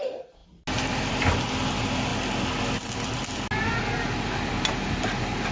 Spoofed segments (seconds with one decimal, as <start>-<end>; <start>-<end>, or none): none